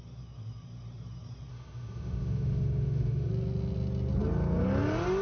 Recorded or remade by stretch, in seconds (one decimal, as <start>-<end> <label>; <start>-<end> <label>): 0.0-1.5 recorded; 1.5-3.3 remade; 3.3-5.2 recorded

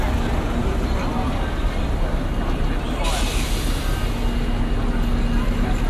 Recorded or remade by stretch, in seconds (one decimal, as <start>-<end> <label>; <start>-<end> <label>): 0.0-5.9 recorded

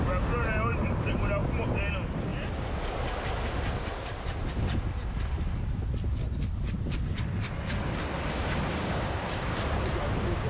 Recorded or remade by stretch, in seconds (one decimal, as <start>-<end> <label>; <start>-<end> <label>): 0.0-8.8 recorded; 8.8-9.6 remade; 9.6-10.5 recorded

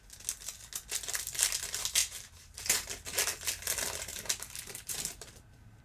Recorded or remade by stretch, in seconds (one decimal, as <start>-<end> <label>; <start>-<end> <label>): 0.0-2.0 recorded; 2.0-2.6 remade; 2.6-4.1 recorded; 4.1-5.8 remade

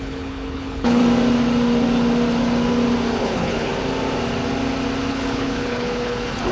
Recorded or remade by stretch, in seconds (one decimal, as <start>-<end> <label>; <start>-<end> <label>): 0.0-1.0 remade; 1.0-3.2 recorded; 3.2-3.7 remade; 3.7-5.1 recorded; 5.1-6.5 remade

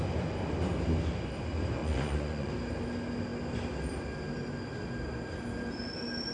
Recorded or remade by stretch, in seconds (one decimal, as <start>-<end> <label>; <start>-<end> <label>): 0.0-1.8 recorded; 1.8-2.5 remade; 2.5-6.3 recorded

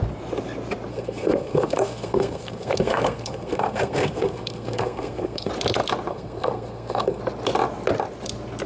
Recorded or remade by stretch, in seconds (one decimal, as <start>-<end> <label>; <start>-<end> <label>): 0.0-0.9 recorded; 0.9-5.5 remade; 5.5-6.1 recorded; 6.1-7.2 remade; 7.2-8.7 recorded